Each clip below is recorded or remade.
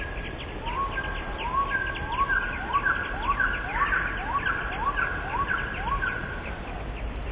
recorded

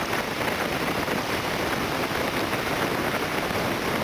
recorded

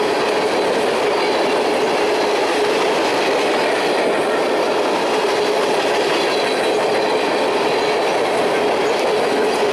recorded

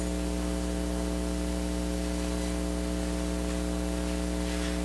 recorded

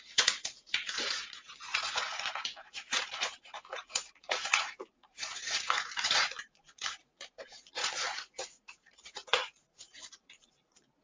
remade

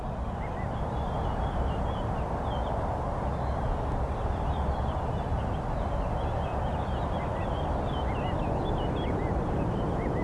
recorded